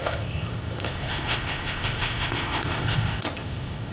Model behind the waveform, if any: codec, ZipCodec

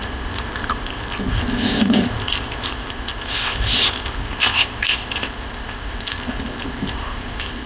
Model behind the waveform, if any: codec, ZipCodec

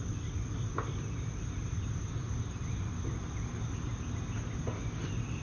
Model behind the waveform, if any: none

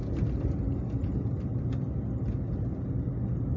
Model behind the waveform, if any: none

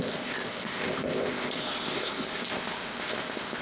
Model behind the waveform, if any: codec, ZipCodec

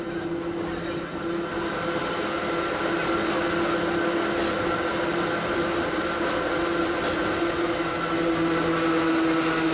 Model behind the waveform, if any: none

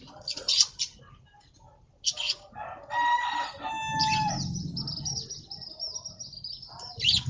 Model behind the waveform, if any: none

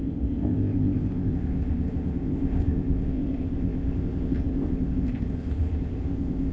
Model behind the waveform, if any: codec, ZipCodec